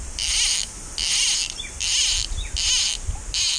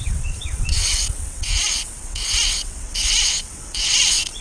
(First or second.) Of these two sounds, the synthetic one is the second